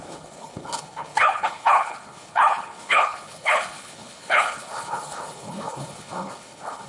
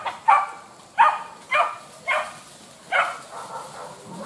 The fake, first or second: first